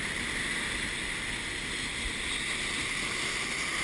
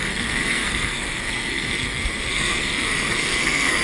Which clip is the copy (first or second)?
second